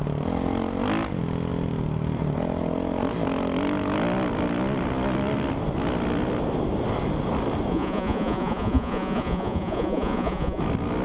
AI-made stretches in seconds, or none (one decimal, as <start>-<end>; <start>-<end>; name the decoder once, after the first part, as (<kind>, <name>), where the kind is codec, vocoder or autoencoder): 7.7-10.6 (vocoder, Vocos)